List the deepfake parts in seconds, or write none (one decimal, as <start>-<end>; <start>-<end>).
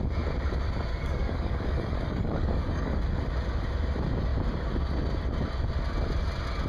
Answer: 0.9-3.0